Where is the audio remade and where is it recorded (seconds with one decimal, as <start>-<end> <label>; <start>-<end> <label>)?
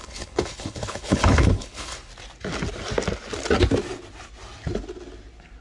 0.0-2.1 remade; 2.1-5.6 recorded